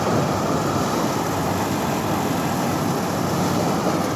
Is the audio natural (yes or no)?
yes